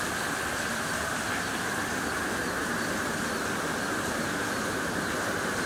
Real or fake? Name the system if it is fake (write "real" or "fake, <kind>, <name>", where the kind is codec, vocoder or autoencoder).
real